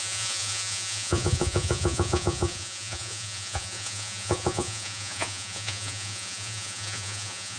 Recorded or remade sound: remade